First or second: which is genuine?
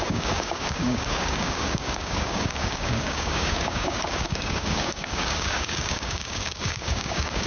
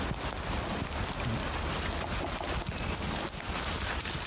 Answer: second